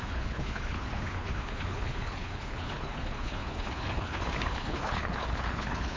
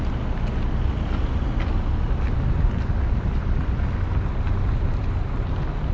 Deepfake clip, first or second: first